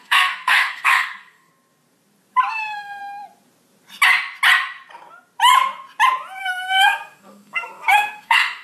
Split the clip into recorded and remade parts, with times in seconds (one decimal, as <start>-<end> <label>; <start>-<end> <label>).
0.0-1.5 remade; 1.5-2.5 recorded; 2.5-3.0 remade; 3.0-6.4 recorded; 6.4-8.6 remade